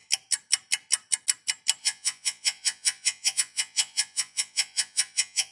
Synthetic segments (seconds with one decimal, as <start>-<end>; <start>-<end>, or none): 1.8-5.5